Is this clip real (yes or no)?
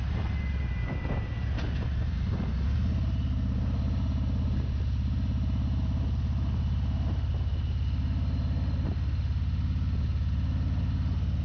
yes